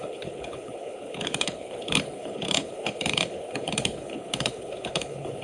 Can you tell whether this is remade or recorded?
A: remade